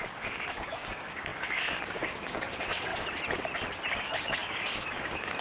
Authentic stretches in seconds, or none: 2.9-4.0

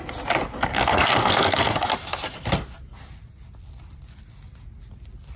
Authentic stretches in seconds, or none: 0.0-0.7; 1.9-5.4

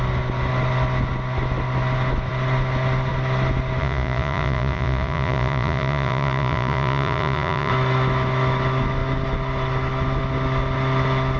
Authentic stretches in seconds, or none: 0.0-3.8; 7.7-11.4

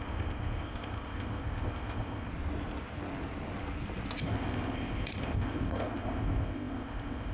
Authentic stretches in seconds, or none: 2.3-4.2